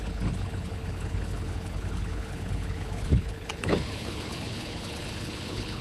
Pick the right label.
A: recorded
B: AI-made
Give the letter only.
B